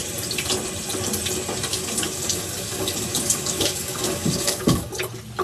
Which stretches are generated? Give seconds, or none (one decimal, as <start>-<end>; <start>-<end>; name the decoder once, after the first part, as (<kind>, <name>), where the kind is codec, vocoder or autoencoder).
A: 1.7-4.9 (codec, DAC)